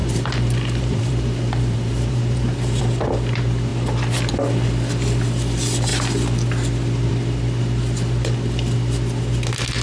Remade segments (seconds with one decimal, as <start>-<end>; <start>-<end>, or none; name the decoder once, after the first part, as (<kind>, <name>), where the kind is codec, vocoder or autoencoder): 0.0-2.8 (vocoder, BigVGAN v2)